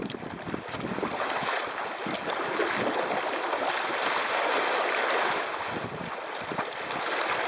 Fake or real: real